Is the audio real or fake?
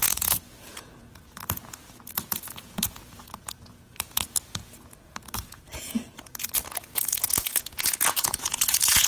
fake